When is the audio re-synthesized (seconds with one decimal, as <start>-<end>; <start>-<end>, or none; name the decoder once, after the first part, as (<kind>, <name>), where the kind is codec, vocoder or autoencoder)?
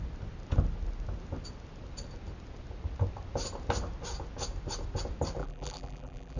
5.4-6.4 (vocoder, BigVGAN v2)